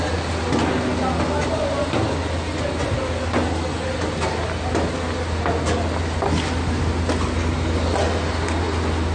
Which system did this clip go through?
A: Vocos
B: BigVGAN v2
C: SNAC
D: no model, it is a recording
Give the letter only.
D